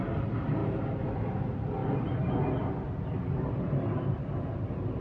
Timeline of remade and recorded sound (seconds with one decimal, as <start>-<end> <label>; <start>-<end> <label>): 0.0-5.0 recorded